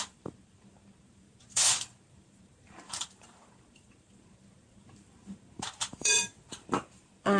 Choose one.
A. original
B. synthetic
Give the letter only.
B